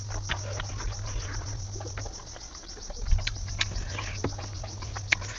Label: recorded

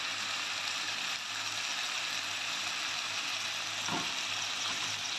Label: recorded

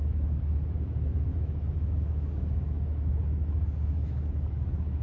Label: remade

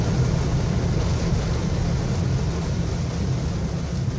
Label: recorded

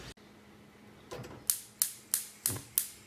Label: recorded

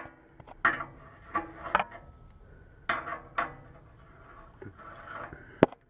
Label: recorded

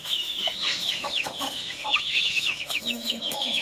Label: remade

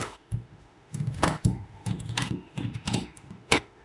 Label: remade